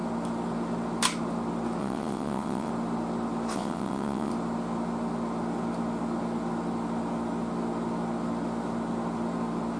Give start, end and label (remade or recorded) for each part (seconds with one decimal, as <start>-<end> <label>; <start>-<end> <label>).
0.0-1.8 recorded; 1.8-2.7 remade; 2.7-3.5 recorded; 3.5-4.3 remade; 4.3-9.8 recorded